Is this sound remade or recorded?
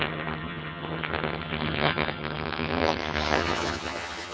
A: remade